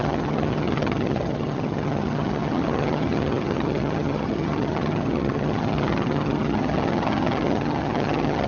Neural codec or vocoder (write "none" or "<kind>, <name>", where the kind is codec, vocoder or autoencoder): vocoder, HiFi-GAN